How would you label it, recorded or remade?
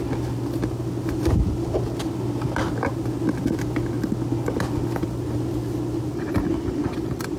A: recorded